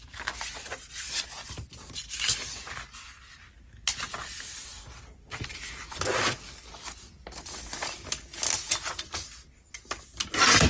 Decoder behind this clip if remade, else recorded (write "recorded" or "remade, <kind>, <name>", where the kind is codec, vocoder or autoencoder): recorded